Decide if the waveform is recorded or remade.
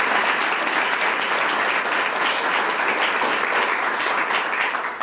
recorded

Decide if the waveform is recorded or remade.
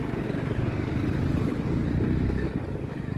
remade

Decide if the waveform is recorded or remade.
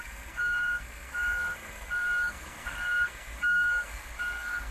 remade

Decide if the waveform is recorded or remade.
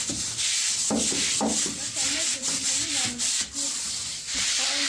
recorded